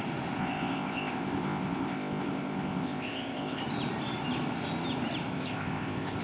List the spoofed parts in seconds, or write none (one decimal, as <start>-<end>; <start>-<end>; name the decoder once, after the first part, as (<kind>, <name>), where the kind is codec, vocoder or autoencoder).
0.4-3.6 (codec, ZipCodec); 5.3-6.2